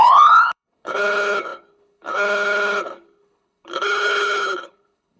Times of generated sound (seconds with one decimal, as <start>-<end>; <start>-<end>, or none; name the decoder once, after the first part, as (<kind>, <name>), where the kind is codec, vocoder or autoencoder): 0.0-5.2 (codec, HILCodec)